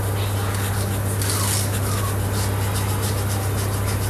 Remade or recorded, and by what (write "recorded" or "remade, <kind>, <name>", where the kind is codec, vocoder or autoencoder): recorded